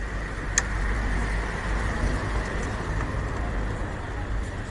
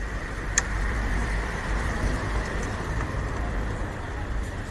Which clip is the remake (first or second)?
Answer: second